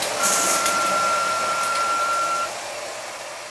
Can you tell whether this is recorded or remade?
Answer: remade